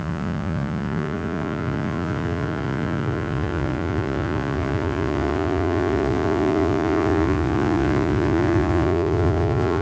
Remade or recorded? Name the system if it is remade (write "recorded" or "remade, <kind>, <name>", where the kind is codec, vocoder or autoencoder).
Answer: remade, vocoder, Vocos